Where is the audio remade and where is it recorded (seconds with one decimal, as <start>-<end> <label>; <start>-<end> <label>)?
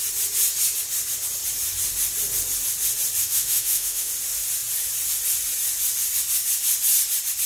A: 0.0-3.2 recorded; 3.2-4.1 remade; 4.1-7.5 recorded